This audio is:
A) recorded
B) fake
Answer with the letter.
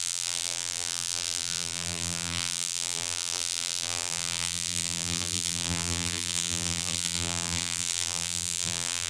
B